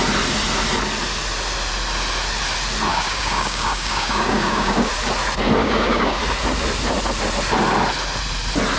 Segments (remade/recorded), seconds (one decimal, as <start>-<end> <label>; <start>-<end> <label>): 0.0-2.9 recorded; 2.9-4.9 remade; 4.9-5.6 recorded; 5.6-6.2 remade; 6.2-8.8 recorded